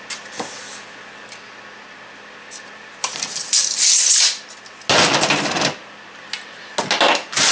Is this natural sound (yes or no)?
yes